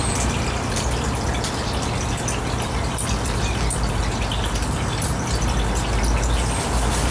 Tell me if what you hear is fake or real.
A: real